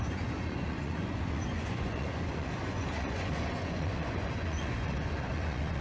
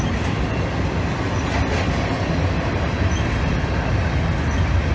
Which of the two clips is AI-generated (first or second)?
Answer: first